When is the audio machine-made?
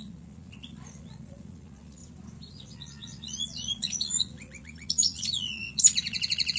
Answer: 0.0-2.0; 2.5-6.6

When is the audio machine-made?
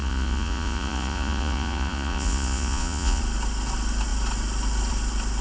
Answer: 0.0-3.2